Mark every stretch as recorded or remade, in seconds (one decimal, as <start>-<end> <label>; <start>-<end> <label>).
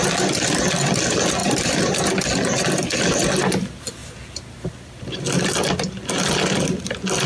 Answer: 0.0-1.4 recorded; 1.4-2.1 remade; 2.1-4.0 recorded; 4.0-4.7 remade; 4.7-7.3 recorded